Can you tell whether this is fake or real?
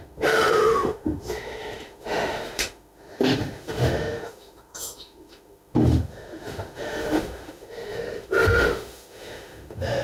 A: fake